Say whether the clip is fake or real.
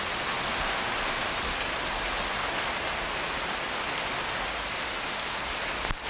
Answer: real